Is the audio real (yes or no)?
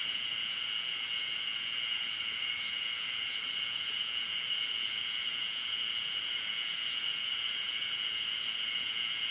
no